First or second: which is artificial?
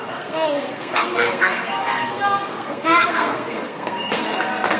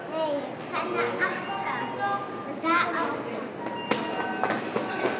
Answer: first